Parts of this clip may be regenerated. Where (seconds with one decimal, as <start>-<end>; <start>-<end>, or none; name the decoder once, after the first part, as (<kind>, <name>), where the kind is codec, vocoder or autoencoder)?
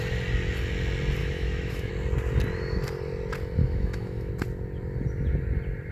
1.2-1.9 (autoencoder, DAC-VAE); 3.6-4.3